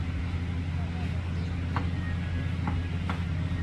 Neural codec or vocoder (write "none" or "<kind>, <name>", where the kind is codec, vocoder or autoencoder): none